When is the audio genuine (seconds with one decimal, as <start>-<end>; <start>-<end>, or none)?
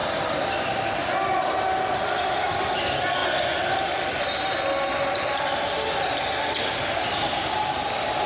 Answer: 0.0-8.3